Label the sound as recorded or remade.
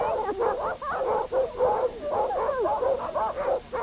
recorded